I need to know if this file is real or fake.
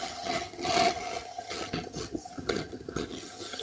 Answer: fake